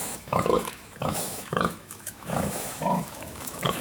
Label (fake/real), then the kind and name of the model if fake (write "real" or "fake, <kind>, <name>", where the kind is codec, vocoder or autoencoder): fake, autoencoder, DAC-VAE